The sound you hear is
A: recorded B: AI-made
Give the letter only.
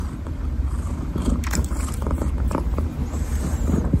B